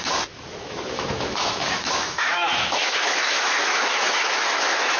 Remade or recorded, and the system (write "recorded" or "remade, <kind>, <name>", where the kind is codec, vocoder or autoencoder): remade, autoencoder, DAC-VAE